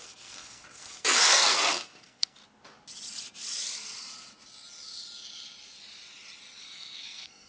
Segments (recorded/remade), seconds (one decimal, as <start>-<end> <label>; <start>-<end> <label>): 0.0-2.4 remade; 2.4-6.6 recorded; 6.6-7.5 remade